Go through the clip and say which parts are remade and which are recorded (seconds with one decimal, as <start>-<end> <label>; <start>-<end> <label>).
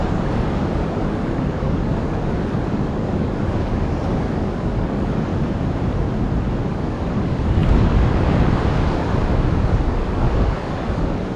0.0-5.3 remade; 5.3-6.7 recorded; 6.7-11.4 remade